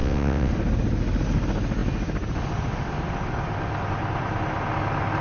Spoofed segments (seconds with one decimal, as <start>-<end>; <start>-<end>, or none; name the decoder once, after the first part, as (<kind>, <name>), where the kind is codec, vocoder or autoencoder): 0.0-0.5 (vocoder, WaveNeXt)